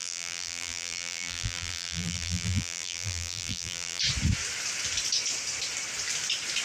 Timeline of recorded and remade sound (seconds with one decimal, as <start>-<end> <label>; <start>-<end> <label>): 0.0-4.0 remade; 4.0-6.6 recorded